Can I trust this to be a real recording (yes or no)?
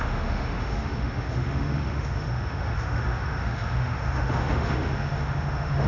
no